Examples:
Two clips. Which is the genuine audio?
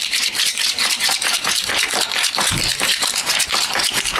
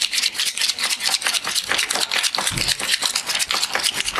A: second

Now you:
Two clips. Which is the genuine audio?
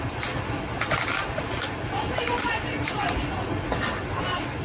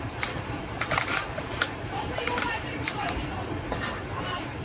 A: first